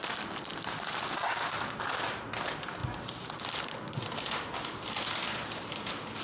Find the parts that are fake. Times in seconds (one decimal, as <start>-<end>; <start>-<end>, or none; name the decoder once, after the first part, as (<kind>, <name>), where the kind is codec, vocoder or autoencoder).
none